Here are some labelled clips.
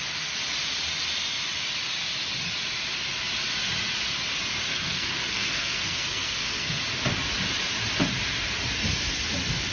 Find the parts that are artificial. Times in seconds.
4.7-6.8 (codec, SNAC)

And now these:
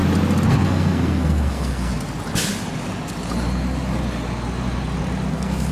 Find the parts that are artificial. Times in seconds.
0.5-1.9 (codec, SNAC); 5.3-5.7

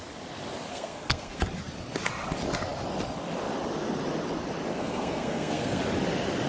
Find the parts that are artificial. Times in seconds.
0.7-1.4 (codec, SNAC); 4.7-5.8

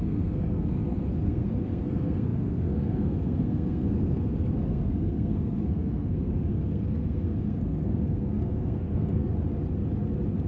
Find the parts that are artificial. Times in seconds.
0.0-9.3 (codec, SNAC)

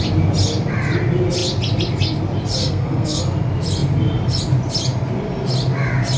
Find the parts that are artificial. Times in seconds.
2.6-3.2 (codec, SNAC)

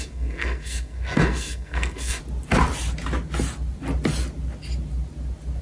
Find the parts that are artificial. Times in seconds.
0.0-2.2 (codec, SNAC)